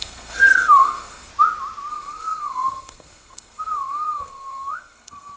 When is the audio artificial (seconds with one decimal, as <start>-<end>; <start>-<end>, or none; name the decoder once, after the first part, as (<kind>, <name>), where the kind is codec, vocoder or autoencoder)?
0.0-1.3 (codec, SNAC); 1.9-5.4